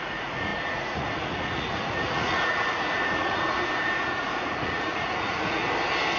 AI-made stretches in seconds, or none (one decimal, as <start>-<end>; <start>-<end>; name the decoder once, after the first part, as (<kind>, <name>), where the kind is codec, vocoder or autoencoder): 0.0-5.6 (vocoder, Vocos)